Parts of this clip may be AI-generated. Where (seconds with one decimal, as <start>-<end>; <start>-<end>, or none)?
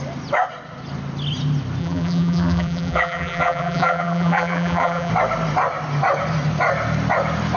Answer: 1.8-5.1